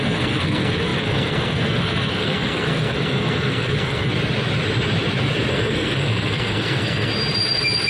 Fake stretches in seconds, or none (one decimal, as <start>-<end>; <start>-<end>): 0.0-4.1; 5.5-7.1